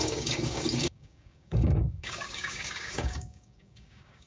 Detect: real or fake fake